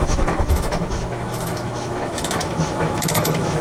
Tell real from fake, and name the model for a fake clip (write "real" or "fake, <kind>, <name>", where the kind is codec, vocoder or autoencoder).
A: fake, autoencoder, DAC-VAE